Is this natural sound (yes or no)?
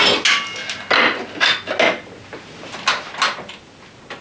yes